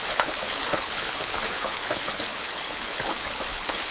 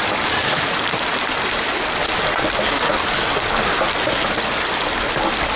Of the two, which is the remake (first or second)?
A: first